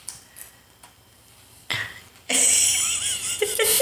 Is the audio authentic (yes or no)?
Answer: no